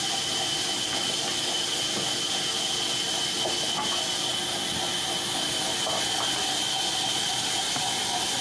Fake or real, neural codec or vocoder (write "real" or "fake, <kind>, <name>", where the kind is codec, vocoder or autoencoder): real